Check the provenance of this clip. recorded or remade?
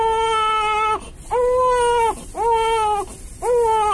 recorded